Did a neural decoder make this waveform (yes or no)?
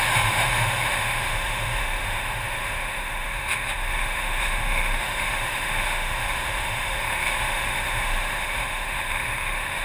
yes